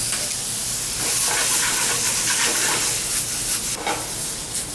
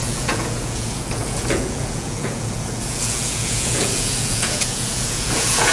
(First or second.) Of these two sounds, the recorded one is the first